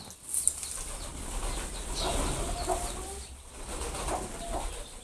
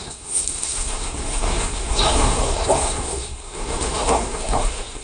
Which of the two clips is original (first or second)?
first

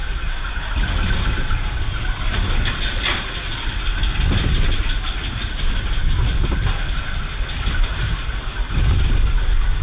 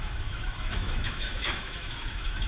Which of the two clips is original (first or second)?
first